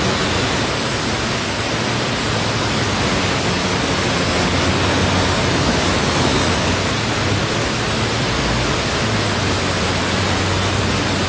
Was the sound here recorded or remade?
recorded